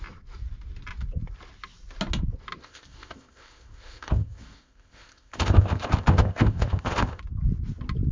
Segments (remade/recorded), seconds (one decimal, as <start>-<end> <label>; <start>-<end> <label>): 0.0-2.6 recorded; 2.6-7.2 remade; 7.2-8.1 recorded